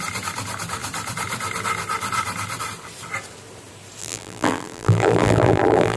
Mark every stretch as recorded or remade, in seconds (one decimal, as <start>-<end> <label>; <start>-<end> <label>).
0.0-4.0 recorded; 4.0-6.0 remade